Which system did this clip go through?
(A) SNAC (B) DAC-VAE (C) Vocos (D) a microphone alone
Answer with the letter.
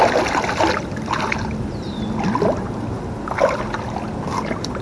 D